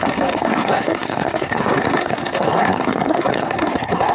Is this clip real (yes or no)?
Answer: no